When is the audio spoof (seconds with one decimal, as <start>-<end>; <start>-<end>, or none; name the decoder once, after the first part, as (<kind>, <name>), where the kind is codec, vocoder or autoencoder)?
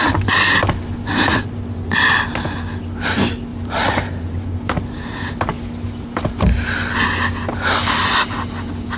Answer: 3.5-4.8 (vocoder, BigVGAN v2)